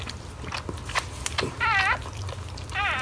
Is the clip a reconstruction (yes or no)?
no